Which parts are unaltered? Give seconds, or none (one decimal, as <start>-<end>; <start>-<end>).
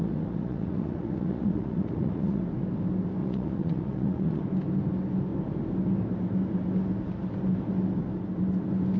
2.4-3.2; 4.4-9.0